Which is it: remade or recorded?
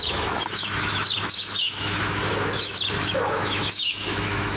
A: remade